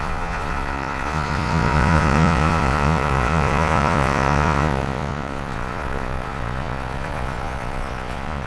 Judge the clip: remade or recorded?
remade